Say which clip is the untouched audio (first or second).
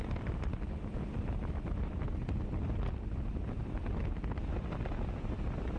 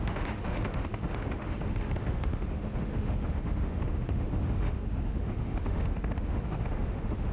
first